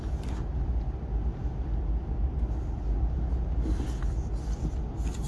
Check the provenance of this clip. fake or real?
real